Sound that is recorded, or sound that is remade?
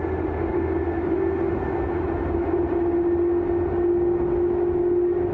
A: recorded